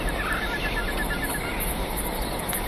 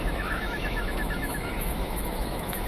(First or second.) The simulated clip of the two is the second